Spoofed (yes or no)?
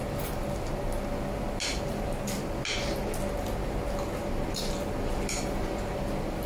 no